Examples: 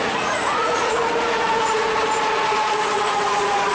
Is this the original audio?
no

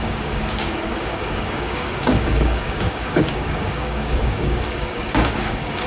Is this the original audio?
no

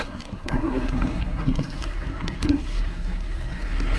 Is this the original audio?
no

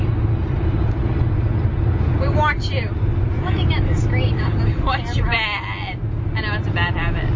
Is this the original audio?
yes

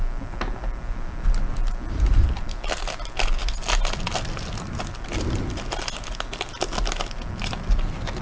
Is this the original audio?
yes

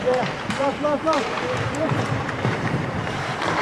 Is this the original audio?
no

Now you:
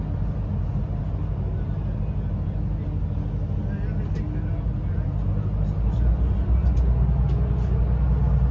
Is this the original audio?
yes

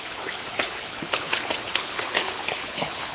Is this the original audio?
no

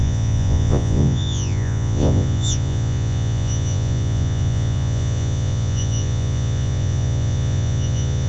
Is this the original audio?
no